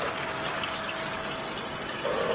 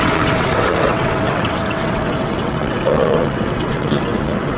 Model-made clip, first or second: second